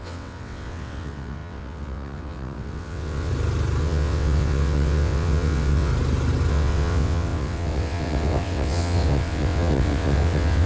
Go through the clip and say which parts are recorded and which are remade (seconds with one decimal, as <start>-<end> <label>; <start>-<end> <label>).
0.0-3.3 remade; 3.3-3.8 recorded; 3.8-5.9 remade; 5.9-6.5 recorded; 6.5-10.7 remade